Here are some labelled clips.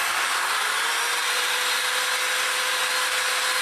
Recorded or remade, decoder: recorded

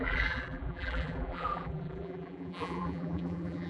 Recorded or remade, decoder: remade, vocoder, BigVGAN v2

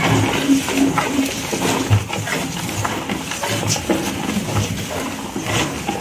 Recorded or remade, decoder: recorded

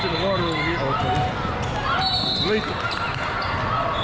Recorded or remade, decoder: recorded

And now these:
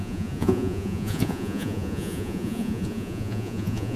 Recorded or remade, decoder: remade, vocoder, Vocos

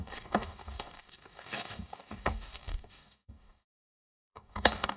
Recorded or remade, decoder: remade, codec, DAC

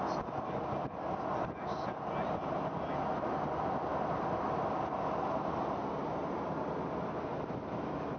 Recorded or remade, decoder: recorded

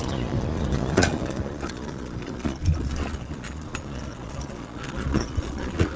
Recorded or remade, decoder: remade, vocoder, Vocos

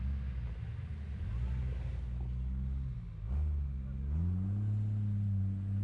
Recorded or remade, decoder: recorded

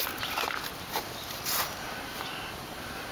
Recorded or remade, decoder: remade, vocoder, BigVGAN v2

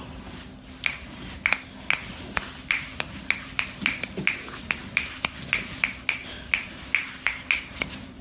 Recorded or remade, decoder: recorded